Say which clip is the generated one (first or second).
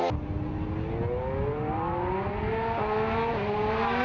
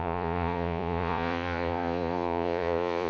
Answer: second